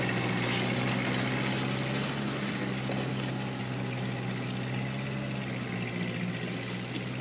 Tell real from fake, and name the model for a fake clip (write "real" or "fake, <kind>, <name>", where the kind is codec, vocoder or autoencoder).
real